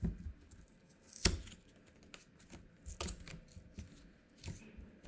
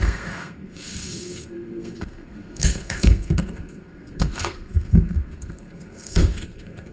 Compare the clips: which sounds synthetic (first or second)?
second